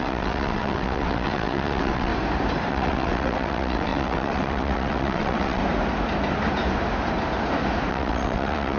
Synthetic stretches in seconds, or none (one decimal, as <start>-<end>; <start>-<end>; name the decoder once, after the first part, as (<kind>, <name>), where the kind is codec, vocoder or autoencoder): 0.0-2.1 (vocoder, WaveNeXt); 2.7-5.6; 7.9-8.8

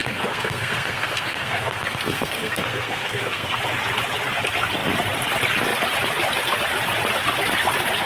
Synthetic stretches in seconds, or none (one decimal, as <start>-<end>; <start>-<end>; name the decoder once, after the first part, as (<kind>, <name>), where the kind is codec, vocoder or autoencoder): 0.0-3.6 (codec, SNAC)

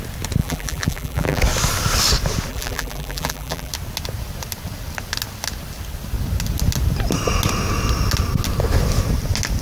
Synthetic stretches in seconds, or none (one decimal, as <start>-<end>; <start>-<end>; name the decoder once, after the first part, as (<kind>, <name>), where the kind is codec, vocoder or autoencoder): 0.4-1.4 (vocoder, BigVGAN v2); 2.5-3.7

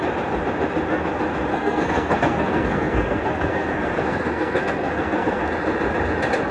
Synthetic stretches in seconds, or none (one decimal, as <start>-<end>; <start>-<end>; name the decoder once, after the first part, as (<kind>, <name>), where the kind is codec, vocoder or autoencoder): 1.5-5.4 (codec, SNAC)